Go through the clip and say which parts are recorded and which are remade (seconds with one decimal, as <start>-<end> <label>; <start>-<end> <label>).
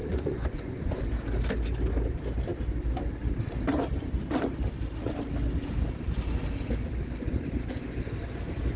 0.0-1.0 remade; 1.0-8.8 recorded